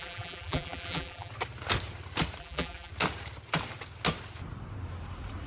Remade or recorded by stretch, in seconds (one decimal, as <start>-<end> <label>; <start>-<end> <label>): 0.0-1.3 remade; 1.3-2.4 recorded; 2.4-2.9 remade; 2.9-5.5 recorded